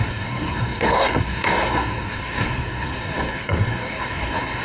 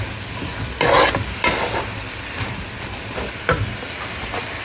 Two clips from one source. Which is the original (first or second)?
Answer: second